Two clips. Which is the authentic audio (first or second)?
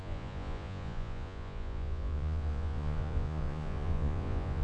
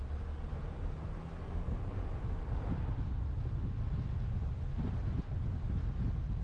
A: second